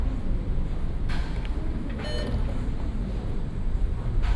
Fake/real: real